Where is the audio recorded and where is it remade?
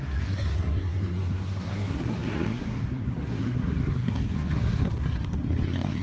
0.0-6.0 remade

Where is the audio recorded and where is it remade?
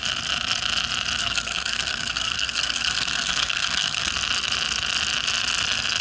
0.0-1.2 recorded; 1.2-4.1 remade; 4.1-6.0 recorded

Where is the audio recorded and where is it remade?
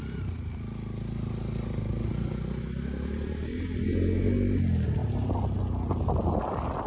0.0-6.9 recorded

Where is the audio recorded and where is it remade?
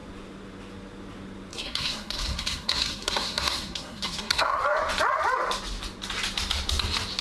0.0-1.5 recorded; 1.5-4.6 remade; 4.6-7.2 recorded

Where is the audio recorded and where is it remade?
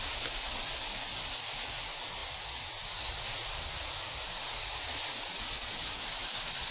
0.0-6.7 recorded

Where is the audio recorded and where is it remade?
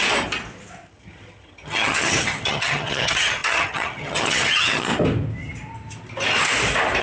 0.0-0.9 recorded; 0.9-4.9 remade; 4.9-7.0 recorded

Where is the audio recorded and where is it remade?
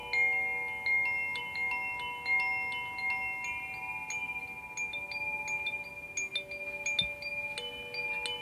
0.0-8.4 recorded